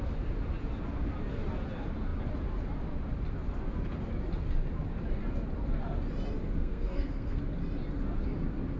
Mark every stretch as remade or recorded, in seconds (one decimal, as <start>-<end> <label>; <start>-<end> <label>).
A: 0.0-6.6 recorded; 6.6-7.4 remade; 7.4-8.8 recorded